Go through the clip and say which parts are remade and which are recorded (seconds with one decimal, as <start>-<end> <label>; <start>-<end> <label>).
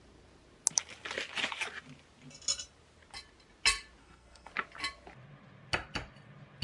0.0-4.0 recorded; 4.0-4.5 remade; 4.5-6.6 recorded